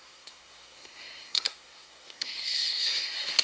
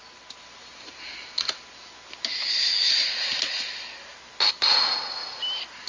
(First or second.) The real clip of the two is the second